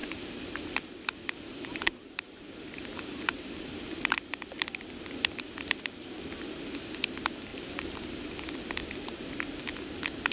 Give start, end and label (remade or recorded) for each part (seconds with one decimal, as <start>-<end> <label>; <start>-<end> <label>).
0.0-0.6 remade; 0.6-1.5 recorded; 1.5-4.6 remade; 4.6-7.5 recorded; 7.5-8.3 remade; 8.3-10.3 recorded